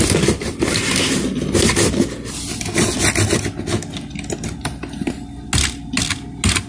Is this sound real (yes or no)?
yes